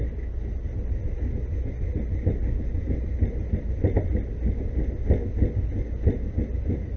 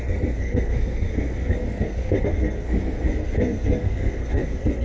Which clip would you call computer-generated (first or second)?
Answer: second